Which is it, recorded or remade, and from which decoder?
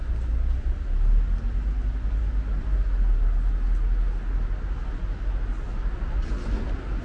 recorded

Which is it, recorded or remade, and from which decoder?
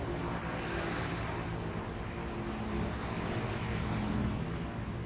recorded